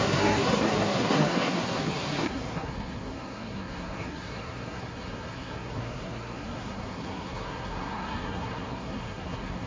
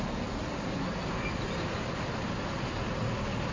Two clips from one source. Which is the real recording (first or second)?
second